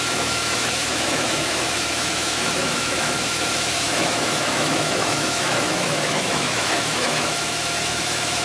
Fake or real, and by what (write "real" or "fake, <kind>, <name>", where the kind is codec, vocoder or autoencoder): fake, autoencoder, DAC-VAE